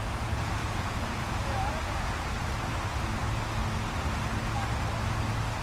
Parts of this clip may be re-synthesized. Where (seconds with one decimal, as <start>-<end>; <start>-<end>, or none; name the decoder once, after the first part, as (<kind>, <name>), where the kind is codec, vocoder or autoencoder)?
0.6-2.2 (vocoder, Vocos)